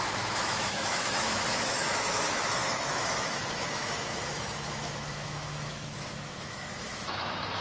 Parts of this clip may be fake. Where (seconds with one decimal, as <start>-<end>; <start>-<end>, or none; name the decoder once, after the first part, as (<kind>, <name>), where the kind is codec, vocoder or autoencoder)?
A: 0.0-7.6 (autoencoder, DAC-VAE)